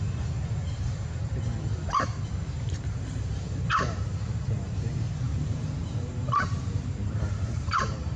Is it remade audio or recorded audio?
remade